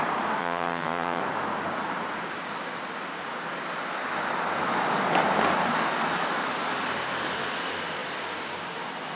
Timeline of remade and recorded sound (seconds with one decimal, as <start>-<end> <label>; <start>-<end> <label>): 0.0-0.4 recorded; 0.4-1.2 remade; 1.2-9.2 recorded